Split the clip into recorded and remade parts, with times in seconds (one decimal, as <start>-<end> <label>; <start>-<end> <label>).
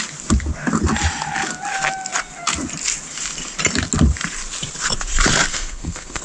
0.0-5.5 recorded; 5.5-6.2 remade